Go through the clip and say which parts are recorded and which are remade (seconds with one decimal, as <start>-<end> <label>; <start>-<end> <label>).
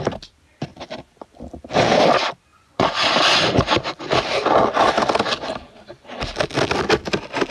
0.0-2.5 recorded; 2.5-3.0 remade; 3.0-7.5 recorded